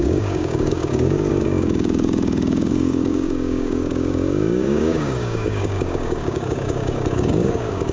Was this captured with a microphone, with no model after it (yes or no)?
no